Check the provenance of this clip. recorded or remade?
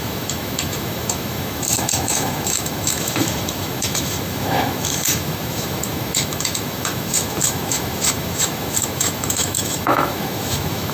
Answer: remade